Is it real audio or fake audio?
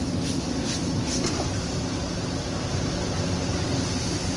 real